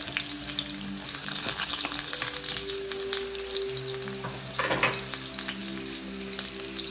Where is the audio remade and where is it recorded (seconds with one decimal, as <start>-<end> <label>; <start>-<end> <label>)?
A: 0.0-1.2 recorded; 1.2-2.2 remade; 2.2-6.9 recorded